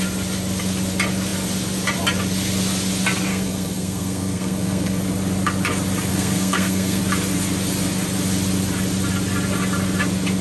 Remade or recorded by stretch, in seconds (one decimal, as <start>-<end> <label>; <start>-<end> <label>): 0.0-3.3 recorded; 3.3-5.0 remade; 5.0-6.1 recorded; 6.1-7.0 remade; 7.0-10.4 recorded